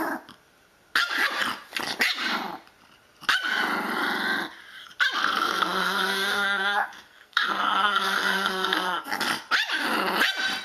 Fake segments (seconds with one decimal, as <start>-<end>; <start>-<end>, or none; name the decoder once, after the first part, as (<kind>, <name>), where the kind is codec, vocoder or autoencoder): 5.2-9.2 (codec, SNAC)